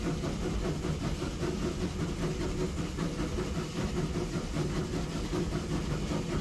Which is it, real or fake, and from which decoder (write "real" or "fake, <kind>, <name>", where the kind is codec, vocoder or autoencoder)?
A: real